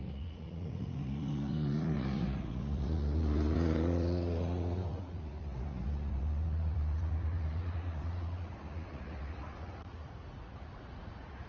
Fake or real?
fake